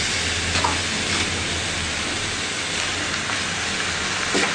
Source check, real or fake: real